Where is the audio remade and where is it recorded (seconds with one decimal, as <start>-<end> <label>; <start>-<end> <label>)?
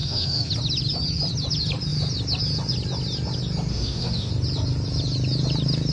0.0-0.5 remade; 0.5-3.7 recorded; 3.7-4.3 remade; 4.3-5.9 recorded